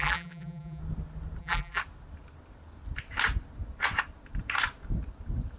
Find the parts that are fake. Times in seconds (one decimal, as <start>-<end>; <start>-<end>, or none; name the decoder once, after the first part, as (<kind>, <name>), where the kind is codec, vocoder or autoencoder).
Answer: 0.0-0.8 (vocoder, BigVGAN v2); 1.4-1.8